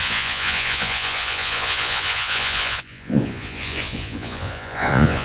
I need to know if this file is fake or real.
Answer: fake